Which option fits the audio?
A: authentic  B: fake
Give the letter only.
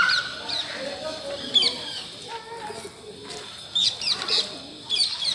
A